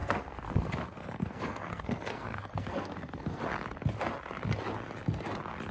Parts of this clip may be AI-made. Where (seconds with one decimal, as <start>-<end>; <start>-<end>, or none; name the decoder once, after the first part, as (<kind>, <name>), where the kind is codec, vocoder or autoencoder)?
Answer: 0.0-3.4 (codec, SNAC)